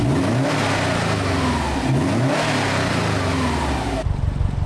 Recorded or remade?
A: recorded